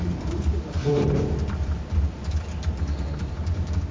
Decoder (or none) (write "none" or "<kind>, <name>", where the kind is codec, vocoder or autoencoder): none